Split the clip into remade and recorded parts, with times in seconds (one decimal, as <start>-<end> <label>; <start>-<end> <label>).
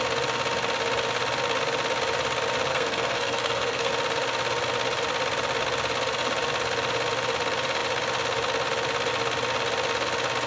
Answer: 0.0-2.7 recorded; 2.7-3.9 remade; 3.9-10.5 recorded